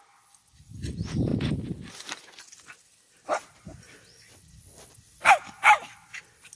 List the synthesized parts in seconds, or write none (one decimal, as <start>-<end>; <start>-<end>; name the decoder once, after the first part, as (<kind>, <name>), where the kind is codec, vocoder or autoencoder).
0.0-3.7 (vocoder, BigVGAN v2); 5.3-6.6